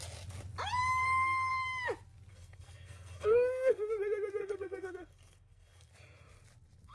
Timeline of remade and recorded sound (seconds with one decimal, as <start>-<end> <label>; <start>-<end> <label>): 0.0-1.0 recorded; 1.0-1.5 remade; 1.5-2.3 recorded; 2.3-3.9 remade; 3.9-4.4 recorded; 4.4-5.9 remade; 5.9-6.9 recorded